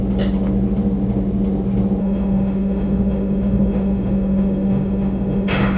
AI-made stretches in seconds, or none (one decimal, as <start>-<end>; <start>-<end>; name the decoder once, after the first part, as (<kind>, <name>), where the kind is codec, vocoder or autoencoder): 2.0-5.8 (autoencoder, DAC-VAE)